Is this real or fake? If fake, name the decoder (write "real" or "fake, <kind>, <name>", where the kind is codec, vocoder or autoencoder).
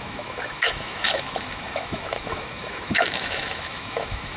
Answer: fake, autoencoder, DAC-VAE